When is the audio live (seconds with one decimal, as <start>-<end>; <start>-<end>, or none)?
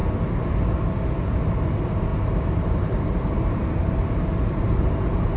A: 0.0-2.1